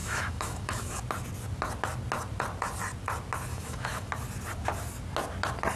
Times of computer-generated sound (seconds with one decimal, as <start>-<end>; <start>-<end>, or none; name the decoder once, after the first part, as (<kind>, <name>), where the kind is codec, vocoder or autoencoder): 0.0-1.0 (autoencoder, DAC-VAE); 3.5-4.1